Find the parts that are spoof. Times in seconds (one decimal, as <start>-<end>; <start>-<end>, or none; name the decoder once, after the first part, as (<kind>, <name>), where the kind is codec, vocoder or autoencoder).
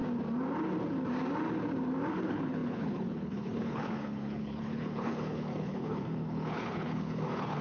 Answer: 2.1-7.6 (codec, HILCodec)